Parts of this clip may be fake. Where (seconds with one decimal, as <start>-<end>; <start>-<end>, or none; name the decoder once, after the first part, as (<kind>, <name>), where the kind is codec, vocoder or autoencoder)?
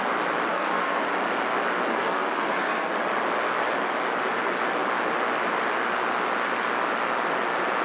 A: 0.5-1.0 (codec, SNAC); 1.9-2.9